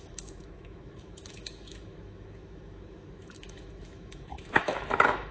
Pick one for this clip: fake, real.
fake